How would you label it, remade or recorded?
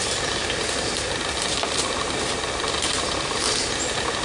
recorded